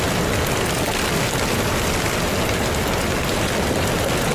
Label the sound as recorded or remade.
recorded